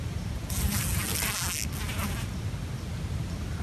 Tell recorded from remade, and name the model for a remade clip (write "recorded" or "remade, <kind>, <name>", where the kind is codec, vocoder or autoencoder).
recorded